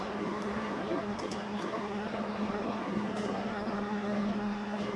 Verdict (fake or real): fake